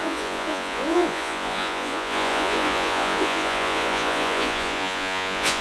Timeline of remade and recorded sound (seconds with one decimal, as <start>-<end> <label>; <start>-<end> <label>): 0.0-5.6 remade

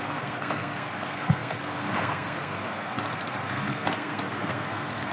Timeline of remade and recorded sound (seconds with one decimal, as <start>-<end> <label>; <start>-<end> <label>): 0.0-5.1 remade

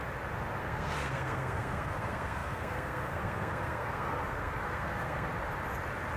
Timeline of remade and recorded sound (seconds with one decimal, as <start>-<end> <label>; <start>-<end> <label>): 0.0-0.6 recorded; 0.6-5.3 remade; 5.3-6.2 recorded

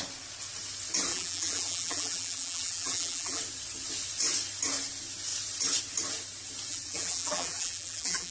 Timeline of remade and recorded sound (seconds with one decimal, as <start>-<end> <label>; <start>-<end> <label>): 0.0-1.1 recorded; 1.1-3.4 remade; 3.4-6.7 recorded; 6.7-8.3 remade

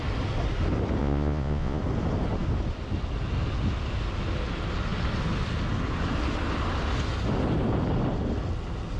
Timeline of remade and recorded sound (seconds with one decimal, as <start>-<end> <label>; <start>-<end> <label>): 0.0-1.0 recorded; 1.0-1.8 remade; 1.8-9.0 recorded

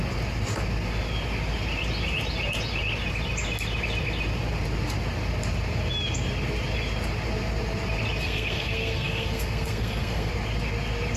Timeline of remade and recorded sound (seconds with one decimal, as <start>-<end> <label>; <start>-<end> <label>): 0.0-8.2 recorded; 8.2-10.3 remade; 10.3-11.2 recorded

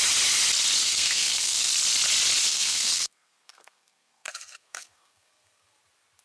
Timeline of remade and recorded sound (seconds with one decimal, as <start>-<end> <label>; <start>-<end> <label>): 0.0-0.8 recorded; 0.8-1.7 remade; 1.7-2.5 recorded; 2.5-5.8 remade; 5.8-6.2 recorded

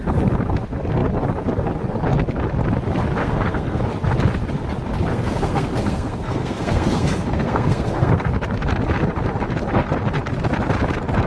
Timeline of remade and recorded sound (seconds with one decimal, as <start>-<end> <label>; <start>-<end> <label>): 0.0-3.2 recorded; 3.2-3.8 remade; 3.8-5.1 recorded; 5.1-8.3 remade; 8.3-11.3 recorded